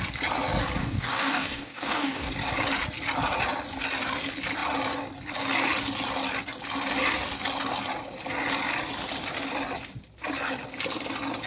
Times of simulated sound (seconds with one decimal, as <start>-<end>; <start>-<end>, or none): 0.8-2.3